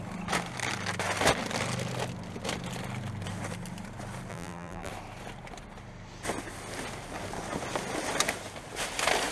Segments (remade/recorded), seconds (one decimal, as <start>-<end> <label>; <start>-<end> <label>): 0.0-4.3 recorded; 4.3-4.9 remade; 4.9-9.3 recorded